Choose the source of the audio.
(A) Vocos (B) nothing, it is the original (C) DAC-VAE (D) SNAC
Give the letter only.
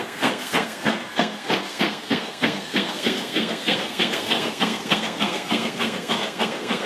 D